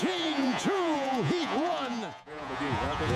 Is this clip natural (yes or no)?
no